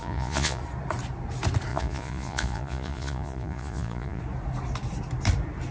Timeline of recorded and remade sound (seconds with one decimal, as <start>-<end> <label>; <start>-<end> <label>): 0.0-0.6 remade; 0.6-1.7 recorded; 1.7-4.2 remade; 4.2-5.7 recorded